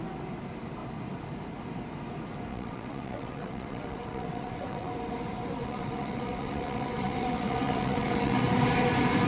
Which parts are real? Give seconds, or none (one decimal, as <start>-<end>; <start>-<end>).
0.0-2.5; 4.9-5.6; 8.4-9.3